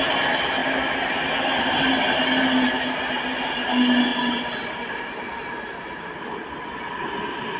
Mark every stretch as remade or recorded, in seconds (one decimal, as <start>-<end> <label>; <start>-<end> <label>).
0.0-7.6 recorded

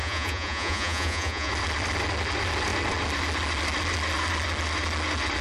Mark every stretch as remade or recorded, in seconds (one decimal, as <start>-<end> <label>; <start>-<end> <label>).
0.0-1.5 remade; 1.5-5.4 recorded

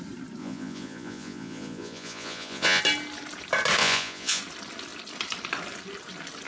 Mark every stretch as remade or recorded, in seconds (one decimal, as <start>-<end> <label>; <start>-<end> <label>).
0.0-0.4 recorded; 0.4-2.8 remade; 2.8-3.8 recorded; 3.8-4.4 remade; 4.4-6.5 recorded

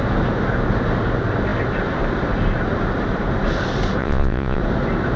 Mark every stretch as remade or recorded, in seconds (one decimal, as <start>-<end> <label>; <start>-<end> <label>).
0.0-4.0 recorded; 4.0-4.6 remade; 4.6-5.2 recorded

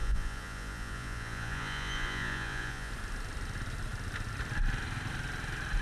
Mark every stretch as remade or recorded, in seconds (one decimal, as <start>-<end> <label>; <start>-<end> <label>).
0.0-2.9 remade; 2.9-5.8 recorded